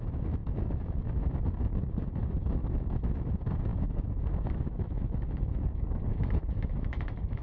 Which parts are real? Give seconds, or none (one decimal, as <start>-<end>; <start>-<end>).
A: none